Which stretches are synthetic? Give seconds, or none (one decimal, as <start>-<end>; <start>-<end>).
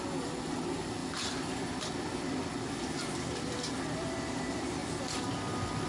none